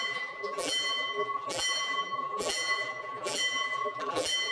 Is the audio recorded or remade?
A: remade